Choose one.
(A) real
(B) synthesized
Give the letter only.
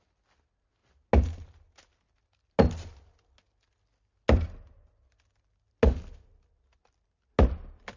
A